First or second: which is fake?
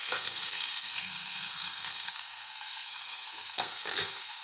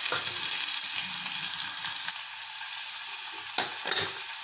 first